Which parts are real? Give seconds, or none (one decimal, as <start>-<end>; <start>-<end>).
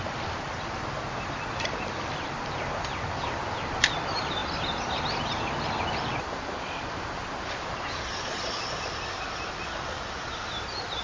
none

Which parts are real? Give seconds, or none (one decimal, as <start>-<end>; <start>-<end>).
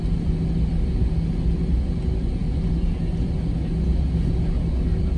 0.0-5.2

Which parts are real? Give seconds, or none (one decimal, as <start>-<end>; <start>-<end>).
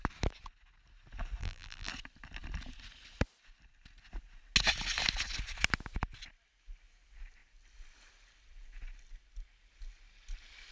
0.0-1.4; 1.9-10.7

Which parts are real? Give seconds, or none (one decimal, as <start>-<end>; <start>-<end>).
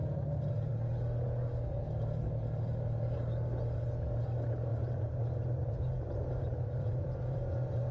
0.7-4.7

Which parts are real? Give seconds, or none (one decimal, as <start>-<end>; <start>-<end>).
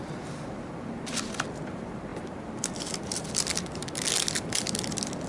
0.0-5.3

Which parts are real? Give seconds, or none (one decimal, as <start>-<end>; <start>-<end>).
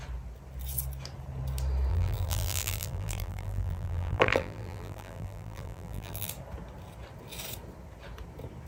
0.0-1.9; 6.3-8.7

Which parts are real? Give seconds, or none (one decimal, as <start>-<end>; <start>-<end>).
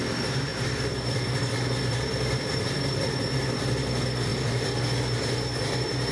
0.0-0.5; 1.4-1.8; 3.1-4.3; 4.8-6.1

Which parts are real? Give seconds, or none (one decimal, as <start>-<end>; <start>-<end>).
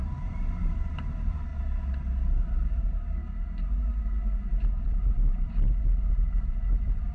1.5-2.7; 3.2-4.8